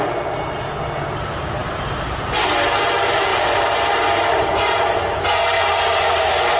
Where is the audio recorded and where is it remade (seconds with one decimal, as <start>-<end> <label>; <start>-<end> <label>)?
0.0-6.6 recorded